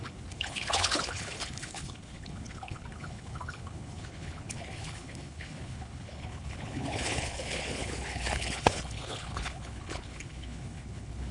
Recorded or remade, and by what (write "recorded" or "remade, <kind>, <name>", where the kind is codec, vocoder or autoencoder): remade, codec, HILCodec